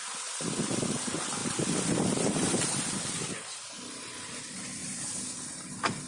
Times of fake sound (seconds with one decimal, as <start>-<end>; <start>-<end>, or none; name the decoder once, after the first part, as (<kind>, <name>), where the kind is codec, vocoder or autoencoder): none